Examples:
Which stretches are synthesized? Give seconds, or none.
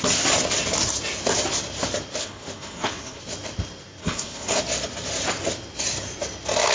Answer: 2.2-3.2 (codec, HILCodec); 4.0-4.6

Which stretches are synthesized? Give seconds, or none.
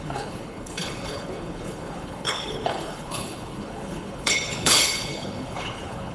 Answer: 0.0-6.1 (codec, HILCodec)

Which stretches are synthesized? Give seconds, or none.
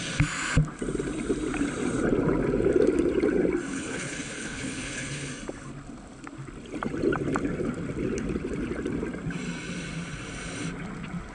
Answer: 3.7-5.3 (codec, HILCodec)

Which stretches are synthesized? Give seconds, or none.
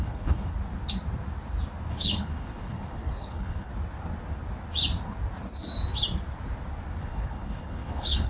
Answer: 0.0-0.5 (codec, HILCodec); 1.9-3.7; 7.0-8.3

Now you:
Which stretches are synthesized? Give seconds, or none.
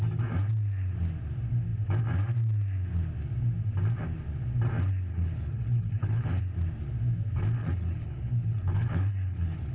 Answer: 5.1-6.4 (codec, HILCodec); 7.6-9.7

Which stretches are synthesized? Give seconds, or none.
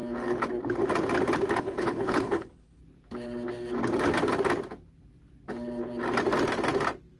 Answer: 1.6-2.8 (codec, HILCodec)